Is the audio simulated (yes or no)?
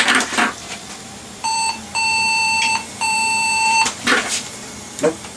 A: yes